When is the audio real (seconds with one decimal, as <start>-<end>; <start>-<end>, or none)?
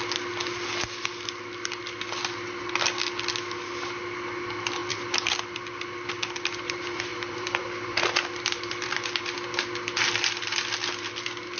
0.0-4.8; 5.4-7.1; 9.2-11.6